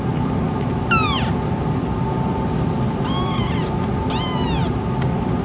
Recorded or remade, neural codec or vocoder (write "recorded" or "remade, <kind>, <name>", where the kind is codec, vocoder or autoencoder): recorded